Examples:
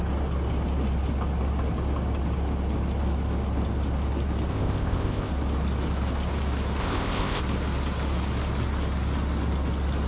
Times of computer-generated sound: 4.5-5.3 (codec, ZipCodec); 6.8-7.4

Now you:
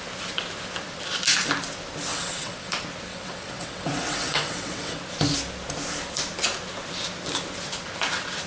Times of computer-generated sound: 2.1-2.7 (vocoder, WaveNeXt); 3.1-5.0

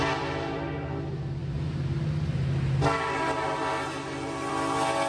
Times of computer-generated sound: none

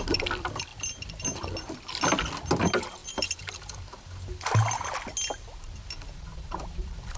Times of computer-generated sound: 0.7-1.5 (vocoder, BigVGAN v2); 3.0-4.0; 6.3-7.2

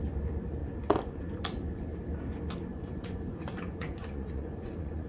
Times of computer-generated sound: 0.6-1.4 (vocoder, Vocos); 2.7-5.1